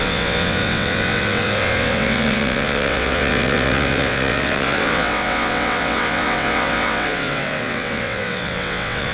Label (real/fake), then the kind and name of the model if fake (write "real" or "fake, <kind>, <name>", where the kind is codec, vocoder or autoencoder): fake, vocoder, WaveNeXt